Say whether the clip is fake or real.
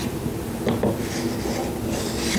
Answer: real